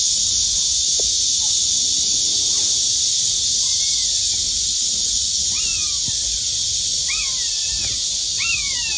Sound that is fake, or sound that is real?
real